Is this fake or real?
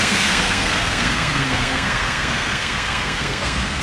fake